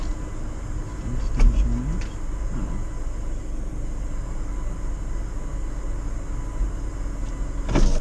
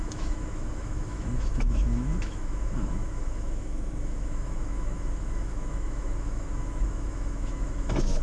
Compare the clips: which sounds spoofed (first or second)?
second